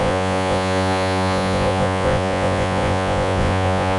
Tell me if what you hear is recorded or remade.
remade